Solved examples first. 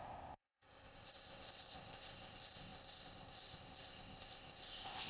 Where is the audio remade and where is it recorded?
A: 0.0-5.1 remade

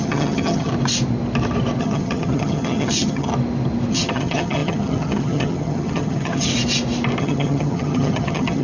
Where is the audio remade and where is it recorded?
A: 0.0-0.7 remade; 0.7-1.8 recorded; 1.8-3.3 remade; 3.3-3.9 recorded; 3.9-6.5 remade; 6.5-7.2 recorded; 7.2-8.6 remade

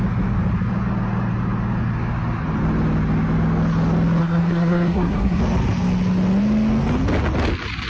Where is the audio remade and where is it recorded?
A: 0.0-4.2 recorded; 4.2-5.4 remade; 5.4-7.9 recorded

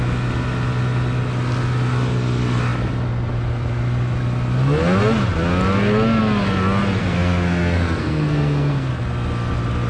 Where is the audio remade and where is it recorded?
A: 0.0-7.0 recorded; 7.0-8.9 remade; 8.9-9.9 recorded

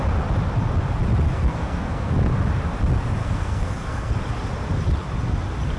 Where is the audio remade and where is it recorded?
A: 0.0-1.3 recorded; 1.3-2.1 remade; 2.1-3.2 recorded; 3.2-4.1 remade; 4.1-5.8 recorded

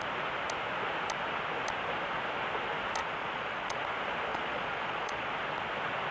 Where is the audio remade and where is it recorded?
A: 0.0-3.0 recorded; 3.0-3.8 remade; 3.8-4.3 recorded; 4.3-5.3 remade; 5.3-6.1 recorded

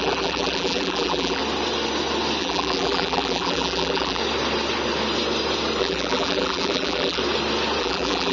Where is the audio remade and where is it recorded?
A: 0.0-1.4 remade; 1.4-2.4 recorded; 2.4-4.2 remade; 4.2-5.8 recorded; 5.8-7.2 remade; 7.2-7.8 recorded; 7.8-8.3 remade

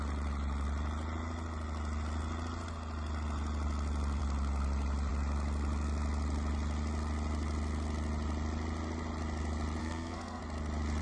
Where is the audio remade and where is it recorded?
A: 0.0-9.8 recorded; 9.8-10.4 remade; 10.4-11.0 recorded